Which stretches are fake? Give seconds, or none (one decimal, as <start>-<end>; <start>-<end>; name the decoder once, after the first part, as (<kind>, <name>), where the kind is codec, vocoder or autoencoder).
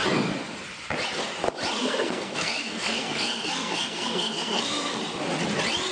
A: 1.8-5.0 (codec, SNAC)